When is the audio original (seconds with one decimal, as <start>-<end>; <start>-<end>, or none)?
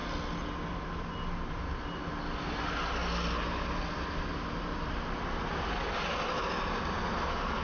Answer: 0.0-7.6